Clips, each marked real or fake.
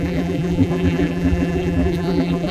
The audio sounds fake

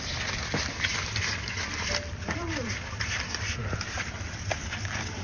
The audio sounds real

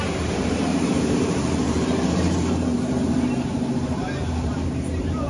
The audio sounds fake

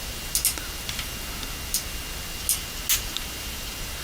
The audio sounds real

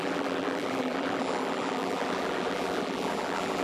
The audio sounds fake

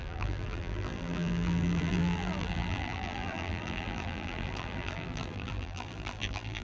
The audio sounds fake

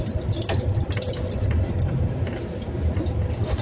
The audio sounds fake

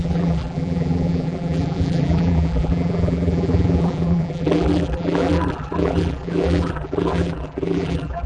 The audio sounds fake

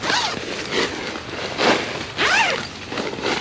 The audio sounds real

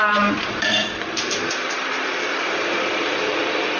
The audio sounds fake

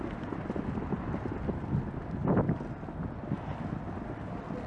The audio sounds real